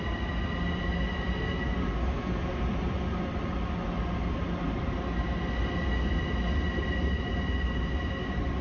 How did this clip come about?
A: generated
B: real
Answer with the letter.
B